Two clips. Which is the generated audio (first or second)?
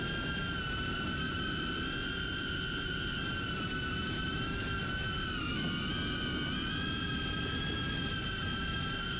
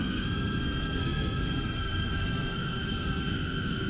second